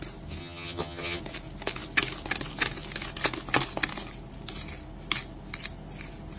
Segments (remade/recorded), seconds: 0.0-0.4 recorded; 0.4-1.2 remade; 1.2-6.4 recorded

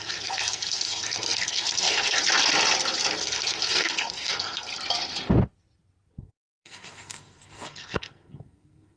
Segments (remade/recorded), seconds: 0.0-2.2 remade; 2.2-3.2 recorded; 3.2-4.7 remade; 4.7-6.2 recorded; 6.2-9.0 remade

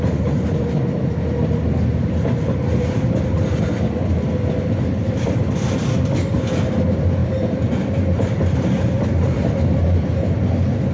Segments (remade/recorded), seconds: 0.0-10.9 recorded

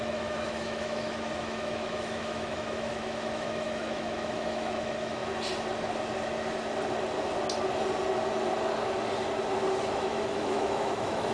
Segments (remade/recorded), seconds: 0.0-5.2 remade; 5.2-9.9 recorded; 9.9-11.3 remade

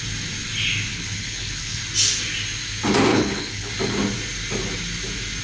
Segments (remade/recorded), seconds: 0.0-0.9 recorded; 0.9-1.8 remade; 1.8-3.1 recorded; 3.1-3.7 remade; 3.7-5.4 recorded

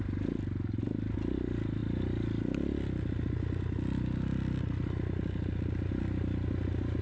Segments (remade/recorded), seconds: 0.0-7.0 recorded

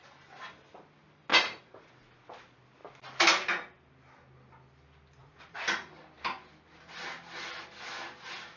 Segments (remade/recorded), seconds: 0.0-1.3 recorded; 1.3-1.9 remade; 1.9-5.2 recorded; 5.2-5.9 remade; 5.9-8.6 recorded